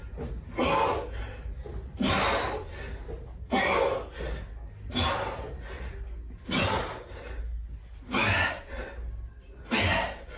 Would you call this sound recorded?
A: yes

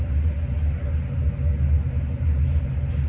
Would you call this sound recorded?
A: yes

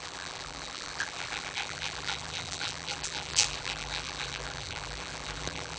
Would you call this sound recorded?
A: no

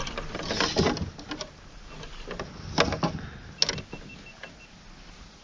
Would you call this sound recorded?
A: yes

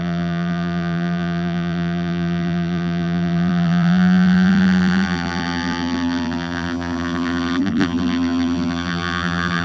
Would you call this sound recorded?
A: no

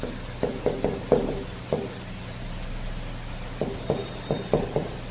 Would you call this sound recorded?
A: yes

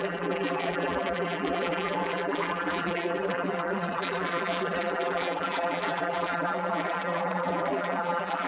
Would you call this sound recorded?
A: no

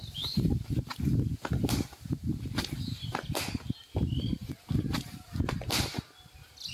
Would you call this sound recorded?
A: yes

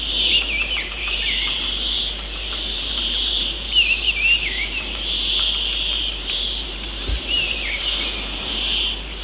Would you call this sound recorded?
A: no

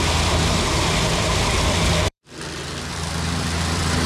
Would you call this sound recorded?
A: no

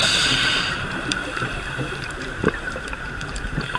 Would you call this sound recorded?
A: no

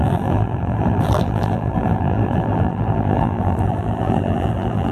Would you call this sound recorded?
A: no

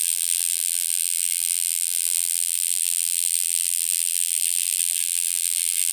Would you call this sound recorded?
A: no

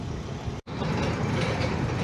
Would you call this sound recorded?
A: yes